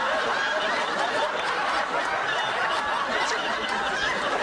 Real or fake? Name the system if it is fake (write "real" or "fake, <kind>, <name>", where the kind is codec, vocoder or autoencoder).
real